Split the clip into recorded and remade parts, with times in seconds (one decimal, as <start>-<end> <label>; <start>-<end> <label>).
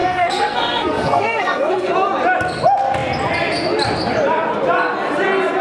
0.0-1.9 remade; 1.9-5.6 recorded